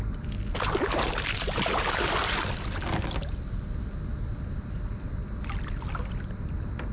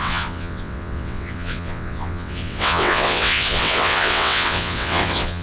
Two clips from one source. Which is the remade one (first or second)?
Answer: second